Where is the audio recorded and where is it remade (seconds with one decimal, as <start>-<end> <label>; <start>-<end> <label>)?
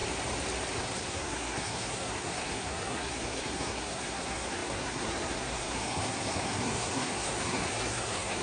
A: 0.0-0.8 recorded; 0.8-8.4 remade